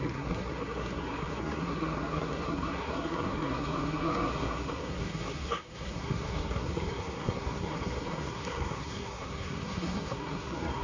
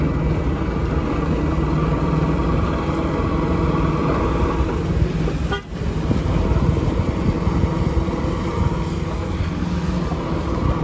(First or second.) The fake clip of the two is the first